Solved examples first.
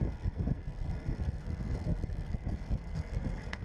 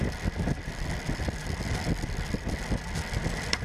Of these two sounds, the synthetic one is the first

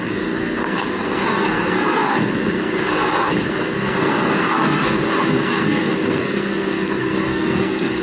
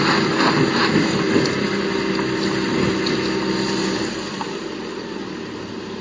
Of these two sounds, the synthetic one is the first